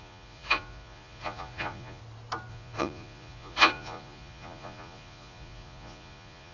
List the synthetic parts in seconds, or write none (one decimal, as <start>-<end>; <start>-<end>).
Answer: 0.0-2.0; 2.5-6.5